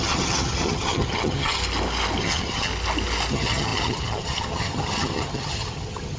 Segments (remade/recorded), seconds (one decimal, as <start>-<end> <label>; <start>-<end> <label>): 0.0-1.6 remade; 1.6-2.2 recorded; 2.2-2.7 remade; 2.7-3.3 recorded; 3.3-6.2 remade